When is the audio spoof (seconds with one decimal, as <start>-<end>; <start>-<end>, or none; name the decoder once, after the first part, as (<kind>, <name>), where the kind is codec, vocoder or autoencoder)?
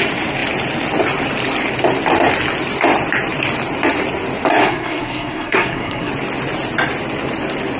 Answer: 4.6-6.1 (codec, SNAC)